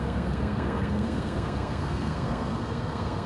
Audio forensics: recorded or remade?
remade